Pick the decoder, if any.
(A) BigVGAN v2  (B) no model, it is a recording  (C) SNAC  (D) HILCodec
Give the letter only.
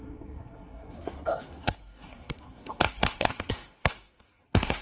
C